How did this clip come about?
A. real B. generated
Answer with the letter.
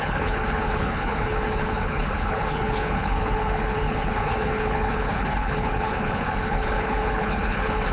B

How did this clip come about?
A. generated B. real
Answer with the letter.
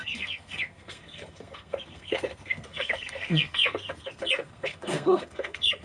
A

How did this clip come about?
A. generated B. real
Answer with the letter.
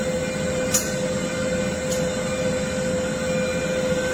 B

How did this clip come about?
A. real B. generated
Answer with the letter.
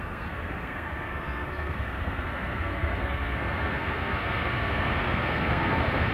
B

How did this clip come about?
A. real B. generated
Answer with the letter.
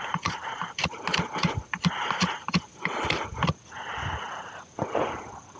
A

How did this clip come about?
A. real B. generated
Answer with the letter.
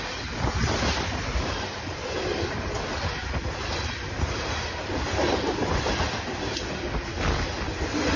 A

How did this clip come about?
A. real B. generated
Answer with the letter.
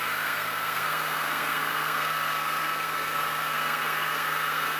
B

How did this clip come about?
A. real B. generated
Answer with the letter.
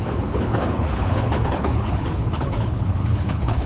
B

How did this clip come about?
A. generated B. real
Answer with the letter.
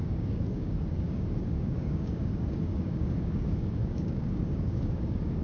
A